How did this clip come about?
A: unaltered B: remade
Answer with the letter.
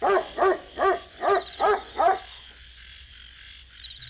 B